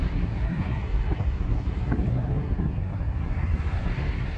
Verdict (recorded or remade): remade